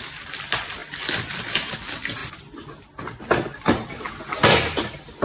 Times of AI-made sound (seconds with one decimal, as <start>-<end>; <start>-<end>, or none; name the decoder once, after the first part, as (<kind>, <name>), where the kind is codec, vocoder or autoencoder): 2.2-4.1 (vocoder, BigVGAN v2)